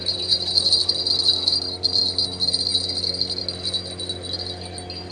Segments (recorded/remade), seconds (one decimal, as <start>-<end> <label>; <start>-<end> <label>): 0.0-0.7 remade; 0.7-5.1 recorded